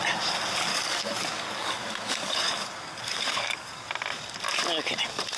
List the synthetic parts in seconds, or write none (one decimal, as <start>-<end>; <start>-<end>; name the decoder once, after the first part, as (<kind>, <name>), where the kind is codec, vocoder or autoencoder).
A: 0.7-3.9 (codec, DAC)